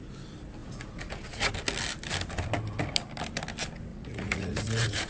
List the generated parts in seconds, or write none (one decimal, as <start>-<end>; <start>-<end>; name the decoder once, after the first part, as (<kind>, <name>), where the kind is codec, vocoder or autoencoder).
0.6-1.5 (vocoder, Vocos); 3.9-5.1

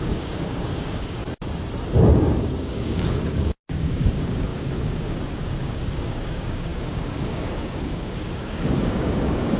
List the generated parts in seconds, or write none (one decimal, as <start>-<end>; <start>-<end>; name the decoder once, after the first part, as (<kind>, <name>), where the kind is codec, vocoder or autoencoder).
0.0-1.2 (codec, DAC); 2.1-9.6

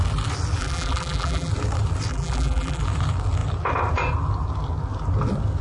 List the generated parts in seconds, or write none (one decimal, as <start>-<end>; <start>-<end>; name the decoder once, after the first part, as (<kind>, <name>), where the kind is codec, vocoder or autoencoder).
0.6-1.5 (vocoder, BigVGAN v2); 2.1-2.8

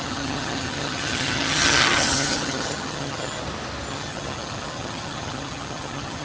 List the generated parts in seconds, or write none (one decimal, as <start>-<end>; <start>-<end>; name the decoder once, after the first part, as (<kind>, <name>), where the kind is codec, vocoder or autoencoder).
0.0-3.4 (vocoder, HiFi-GAN); 3.9-6.2

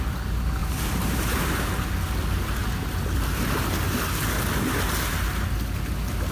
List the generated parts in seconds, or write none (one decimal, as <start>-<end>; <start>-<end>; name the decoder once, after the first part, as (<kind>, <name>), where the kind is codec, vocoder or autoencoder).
0.6-1.5 (vocoder, BigVGAN v2)

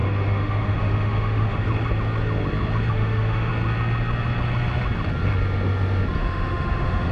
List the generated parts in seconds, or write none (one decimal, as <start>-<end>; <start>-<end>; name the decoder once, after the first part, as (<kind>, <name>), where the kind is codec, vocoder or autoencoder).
0.0-1.6 (autoencoder, DAC-VAE); 2.9-3.5; 6.2-7.1